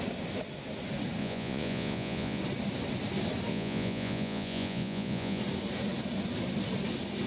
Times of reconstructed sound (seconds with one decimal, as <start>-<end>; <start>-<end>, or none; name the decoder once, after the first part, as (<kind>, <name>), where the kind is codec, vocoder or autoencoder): 1.2-2.4 (vocoder, Vocos); 3.5-5.4